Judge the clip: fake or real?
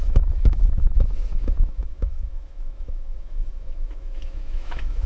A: fake